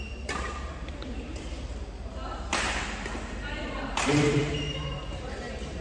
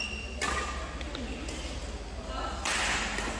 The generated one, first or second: first